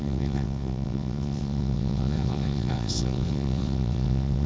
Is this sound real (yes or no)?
no